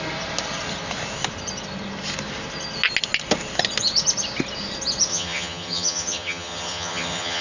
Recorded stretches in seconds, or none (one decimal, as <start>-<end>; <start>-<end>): 0.0-5.1